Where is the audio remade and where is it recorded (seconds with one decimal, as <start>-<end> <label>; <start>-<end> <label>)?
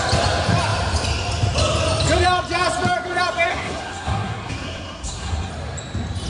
0.0-3.5 recorded; 3.5-5.5 remade; 5.5-6.3 recorded